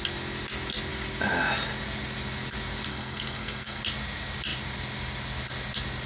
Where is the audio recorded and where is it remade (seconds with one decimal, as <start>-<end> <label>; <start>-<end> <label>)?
0.0-2.9 recorded; 2.9-3.8 remade; 3.8-6.1 recorded